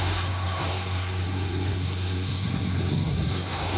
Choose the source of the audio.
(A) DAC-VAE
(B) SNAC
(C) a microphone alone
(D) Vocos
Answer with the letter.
B